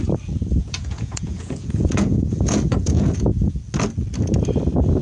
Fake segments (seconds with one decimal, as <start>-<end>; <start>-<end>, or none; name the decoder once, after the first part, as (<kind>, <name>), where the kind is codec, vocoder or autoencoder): 0.6-3.6 (vocoder, Vocos)

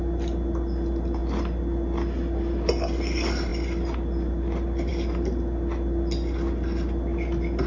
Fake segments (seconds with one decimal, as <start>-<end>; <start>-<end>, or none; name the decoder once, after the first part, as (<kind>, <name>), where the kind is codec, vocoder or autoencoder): none

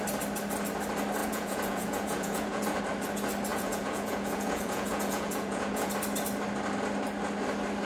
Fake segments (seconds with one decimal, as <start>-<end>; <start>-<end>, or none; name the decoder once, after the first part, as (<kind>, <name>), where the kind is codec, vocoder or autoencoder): 1.2-2.8 (vocoder, Vocos); 3.5-5.9

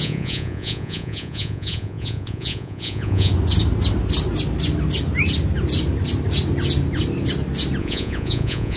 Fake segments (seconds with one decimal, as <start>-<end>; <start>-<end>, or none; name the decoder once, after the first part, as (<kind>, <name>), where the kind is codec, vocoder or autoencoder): 0.0-3.3 (vocoder, Vocos); 7.8-8.8

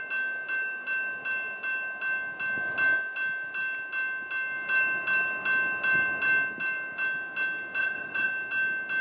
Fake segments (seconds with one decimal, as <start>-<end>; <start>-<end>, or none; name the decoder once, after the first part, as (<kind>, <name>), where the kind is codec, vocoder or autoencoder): 7.8-8.3 (vocoder, Vocos)